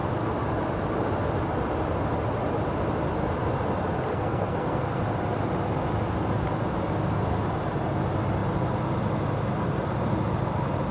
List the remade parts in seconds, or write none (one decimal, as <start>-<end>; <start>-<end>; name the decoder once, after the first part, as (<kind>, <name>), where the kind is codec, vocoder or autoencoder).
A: 4.1-5.0 (codec, SNAC)